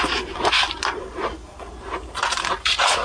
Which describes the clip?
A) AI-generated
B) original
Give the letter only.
B